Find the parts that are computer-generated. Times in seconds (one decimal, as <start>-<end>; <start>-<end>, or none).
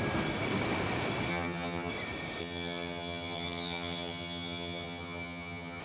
1.3-1.9; 2.4-5.8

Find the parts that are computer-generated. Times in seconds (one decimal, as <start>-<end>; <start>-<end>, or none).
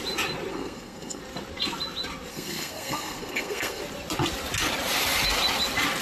0.5-1.2; 2.3-3.8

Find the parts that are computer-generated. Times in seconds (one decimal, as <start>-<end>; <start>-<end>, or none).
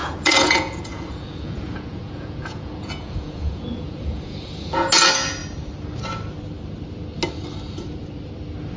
0.0-4.9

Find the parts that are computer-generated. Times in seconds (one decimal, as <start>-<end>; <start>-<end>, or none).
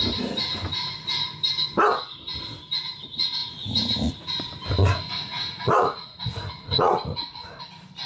3.4-4.3; 4.8-7.6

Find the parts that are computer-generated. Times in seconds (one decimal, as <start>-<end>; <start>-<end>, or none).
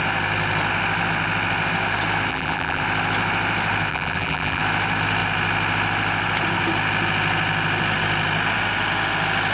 2.3-2.8; 3.9-4.6